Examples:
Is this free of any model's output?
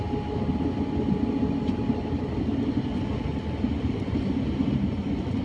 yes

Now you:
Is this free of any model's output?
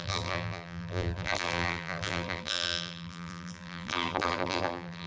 no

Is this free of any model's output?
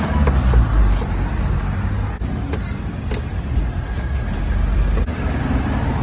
yes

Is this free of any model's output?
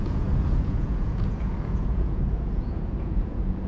no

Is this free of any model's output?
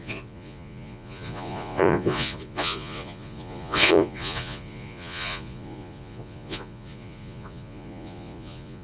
no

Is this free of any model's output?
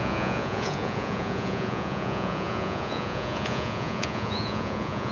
no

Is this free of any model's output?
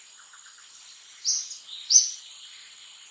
yes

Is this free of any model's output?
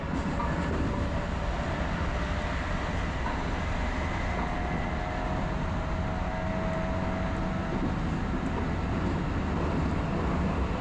yes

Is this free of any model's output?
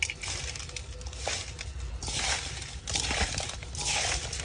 yes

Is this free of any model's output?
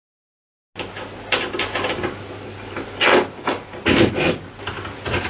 yes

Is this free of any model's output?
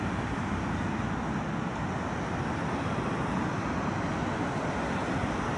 yes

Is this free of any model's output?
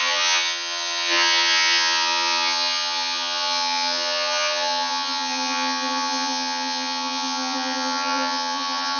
no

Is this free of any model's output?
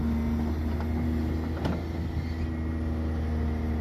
yes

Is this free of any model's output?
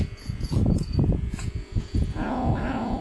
no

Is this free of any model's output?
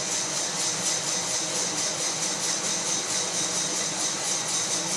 no